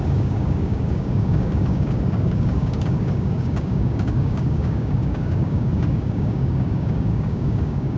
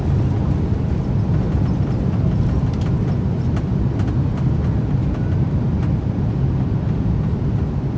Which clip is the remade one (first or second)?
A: first